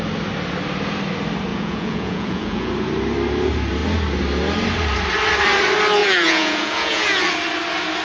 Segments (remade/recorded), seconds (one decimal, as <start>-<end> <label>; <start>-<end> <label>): 0.0-1.5 recorded; 1.5-2.7 remade; 2.7-6.0 recorded; 6.0-7.2 remade; 7.2-8.0 recorded

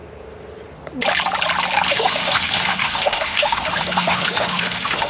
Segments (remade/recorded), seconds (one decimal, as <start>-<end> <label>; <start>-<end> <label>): 0.0-1.9 recorded; 1.9-5.1 remade

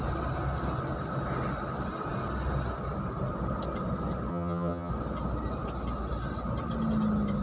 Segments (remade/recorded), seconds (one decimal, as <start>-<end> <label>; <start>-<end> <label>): 0.0-4.3 recorded; 4.3-4.9 remade; 4.9-7.4 recorded

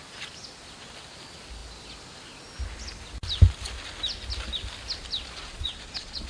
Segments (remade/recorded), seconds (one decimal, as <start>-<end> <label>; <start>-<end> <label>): 0.0-5.4 recorded; 5.4-6.3 remade

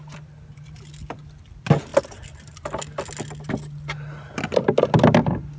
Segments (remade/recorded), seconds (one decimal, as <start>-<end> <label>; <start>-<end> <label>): 0.0-5.6 recorded

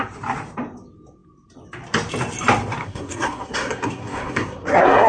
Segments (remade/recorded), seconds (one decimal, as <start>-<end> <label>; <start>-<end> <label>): 0.0-2.8 recorded; 2.8-5.1 remade

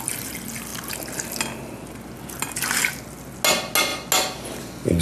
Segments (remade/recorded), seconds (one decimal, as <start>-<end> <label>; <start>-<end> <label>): 0.0-5.0 recorded